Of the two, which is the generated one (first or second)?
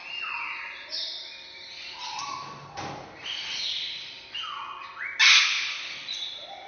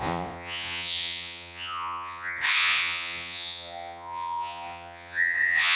second